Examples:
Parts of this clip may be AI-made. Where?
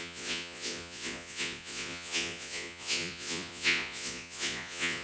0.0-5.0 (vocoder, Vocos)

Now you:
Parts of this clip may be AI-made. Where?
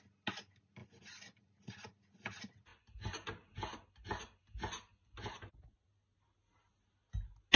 none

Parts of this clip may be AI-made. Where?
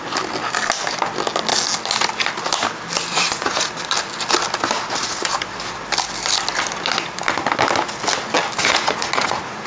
3.1-3.7 (vocoder, Vocos); 8.6-9.7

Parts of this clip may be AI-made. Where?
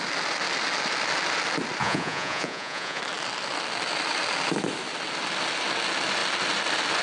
1.8-3.0 (vocoder, Vocos)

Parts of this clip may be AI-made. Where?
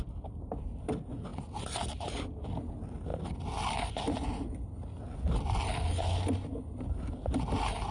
none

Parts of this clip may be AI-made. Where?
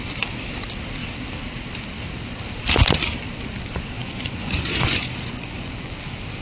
4.0-6.0 (vocoder, Vocos)